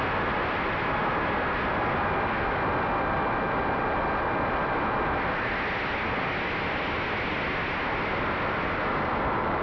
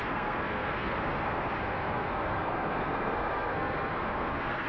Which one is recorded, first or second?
first